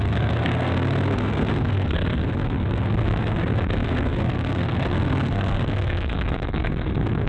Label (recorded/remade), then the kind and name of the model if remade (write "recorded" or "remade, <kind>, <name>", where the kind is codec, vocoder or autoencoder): remade, codec, SNAC